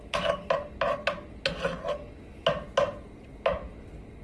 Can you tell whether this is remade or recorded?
recorded